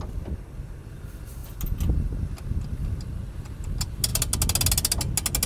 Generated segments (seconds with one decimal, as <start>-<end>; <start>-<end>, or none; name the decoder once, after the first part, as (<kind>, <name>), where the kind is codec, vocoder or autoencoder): none